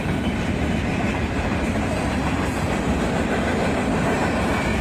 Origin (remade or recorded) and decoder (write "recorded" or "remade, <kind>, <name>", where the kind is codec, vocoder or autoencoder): recorded